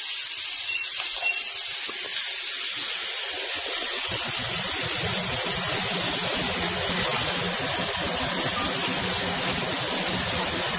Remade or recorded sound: recorded